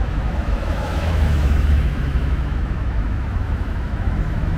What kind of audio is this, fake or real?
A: fake